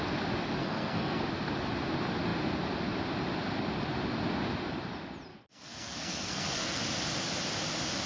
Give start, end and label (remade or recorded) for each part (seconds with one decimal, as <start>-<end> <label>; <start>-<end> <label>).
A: 0.0-0.6 recorded; 0.6-1.2 remade; 1.2-5.3 recorded; 5.3-6.8 remade; 6.8-8.1 recorded